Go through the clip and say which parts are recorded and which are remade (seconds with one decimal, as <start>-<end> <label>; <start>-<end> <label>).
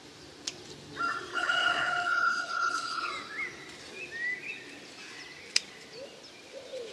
0.0-1.3 recorded; 1.3-3.1 remade; 3.1-6.9 recorded